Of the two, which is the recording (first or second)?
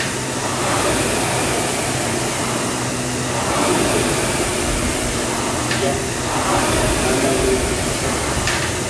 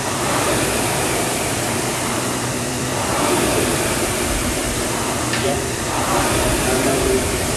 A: first